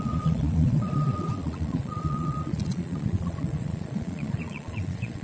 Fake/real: fake